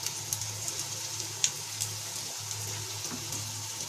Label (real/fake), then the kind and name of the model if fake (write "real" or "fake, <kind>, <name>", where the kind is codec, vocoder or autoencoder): real